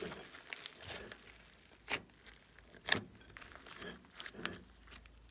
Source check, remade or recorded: recorded